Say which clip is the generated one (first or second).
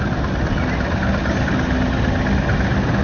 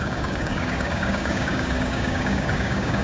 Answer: second